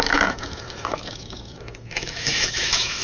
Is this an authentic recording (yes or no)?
no